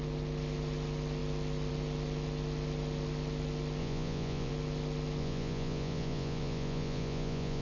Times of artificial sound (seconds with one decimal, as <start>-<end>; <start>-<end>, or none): 3.8-4.5; 5.2-7.6